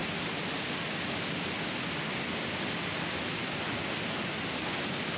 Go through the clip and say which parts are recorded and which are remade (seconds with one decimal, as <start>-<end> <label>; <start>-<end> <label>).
0.0-5.2 recorded